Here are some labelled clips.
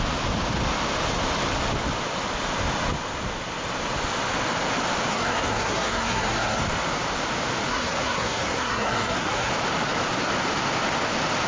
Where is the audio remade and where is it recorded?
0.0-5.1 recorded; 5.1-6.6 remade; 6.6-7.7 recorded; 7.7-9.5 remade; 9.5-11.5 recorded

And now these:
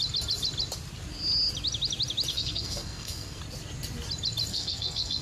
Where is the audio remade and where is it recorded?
0.0-2.3 recorded; 2.3-3.4 remade; 3.4-4.5 recorded; 4.5-5.2 remade

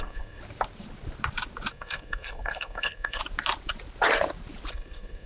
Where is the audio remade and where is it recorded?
0.0-0.4 remade; 0.4-1.7 recorded; 1.7-3.2 remade; 3.2-4.7 recorded; 4.7-5.3 remade

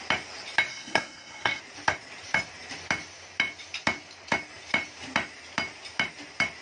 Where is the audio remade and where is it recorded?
0.0-0.7 recorded; 0.7-1.6 remade; 1.6-6.6 recorded

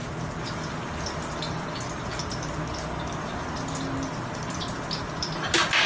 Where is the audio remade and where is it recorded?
0.0-5.9 recorded

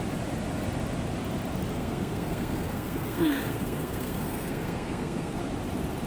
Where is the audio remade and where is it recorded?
0.0-1.7 recorded; 1.7-5.4 remade; 5.4-6.1 recorded

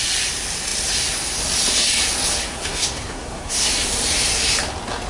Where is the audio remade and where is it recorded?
0.0-2.4 recorded; 2.4-3.7 remade; 3.7-5.1 recorded

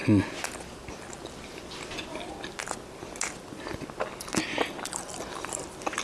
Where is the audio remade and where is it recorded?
0.0-6.0 recorded